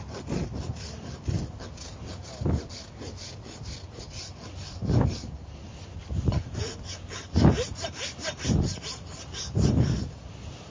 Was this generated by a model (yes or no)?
no